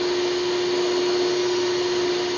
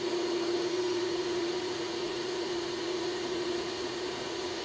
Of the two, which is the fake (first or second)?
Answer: second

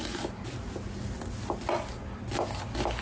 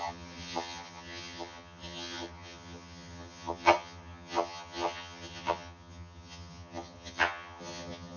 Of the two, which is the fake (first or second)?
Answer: second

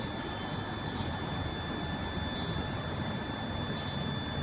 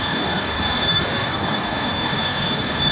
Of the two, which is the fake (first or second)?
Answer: second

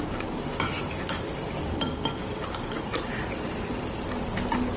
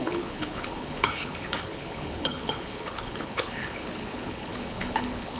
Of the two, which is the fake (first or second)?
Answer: second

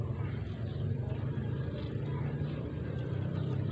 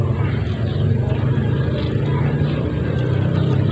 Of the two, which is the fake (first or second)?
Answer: first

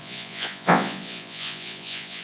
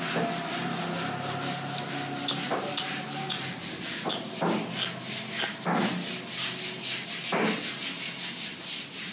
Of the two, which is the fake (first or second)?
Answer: first